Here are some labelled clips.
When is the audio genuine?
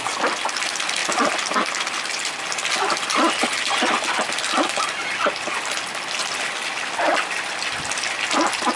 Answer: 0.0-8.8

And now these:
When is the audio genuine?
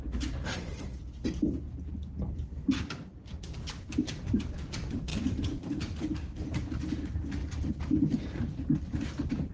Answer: 0.0-9.5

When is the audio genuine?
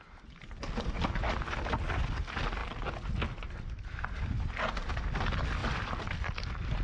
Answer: 0.0-5.6; 6.2-6.8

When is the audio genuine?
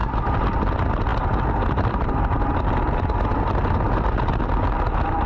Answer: 0.0-5.3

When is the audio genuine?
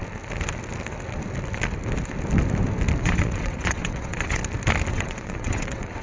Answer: 0.0-3.0; 4.4-4.9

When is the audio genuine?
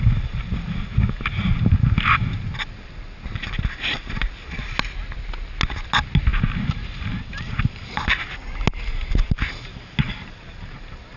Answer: 0.0-11.2